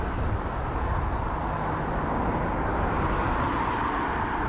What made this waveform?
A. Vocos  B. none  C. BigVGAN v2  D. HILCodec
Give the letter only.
B